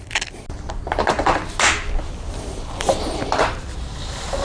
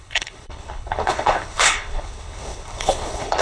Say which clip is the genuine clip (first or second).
first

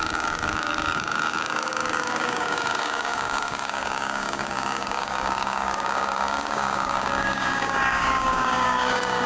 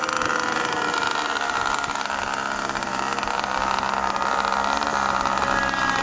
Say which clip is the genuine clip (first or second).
second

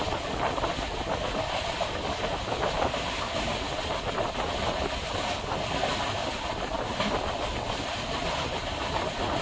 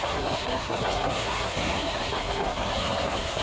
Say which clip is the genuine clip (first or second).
first